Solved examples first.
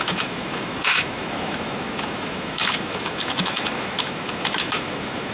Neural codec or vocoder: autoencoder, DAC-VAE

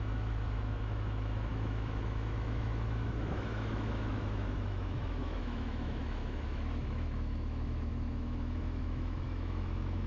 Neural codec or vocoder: autoencoder, DAC-VAE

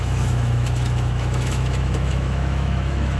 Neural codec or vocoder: autoencoder, DAC-VAE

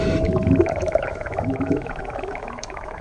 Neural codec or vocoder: autoencoder, DAC-VAE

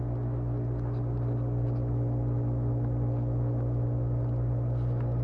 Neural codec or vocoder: none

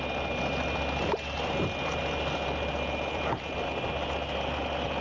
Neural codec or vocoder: none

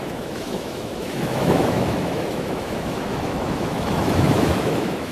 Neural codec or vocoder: autoencoder, DAC-VAE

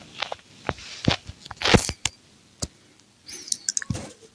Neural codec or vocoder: none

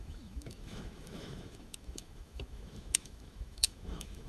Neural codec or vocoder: autoencoder, DAC-VAE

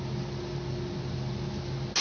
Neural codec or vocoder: none